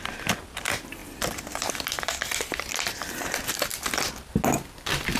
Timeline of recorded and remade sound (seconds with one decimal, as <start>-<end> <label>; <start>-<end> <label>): 0.0-1.0 recorded; 1.0-4.1 remade; 4.1-5.2 recorded